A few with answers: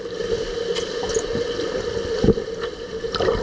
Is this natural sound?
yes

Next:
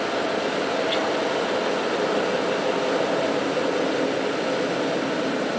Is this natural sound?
yes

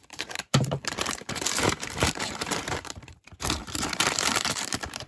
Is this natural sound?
no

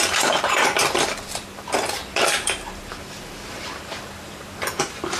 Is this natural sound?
no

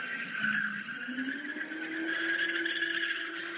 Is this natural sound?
yes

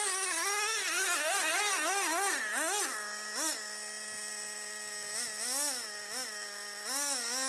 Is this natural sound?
yes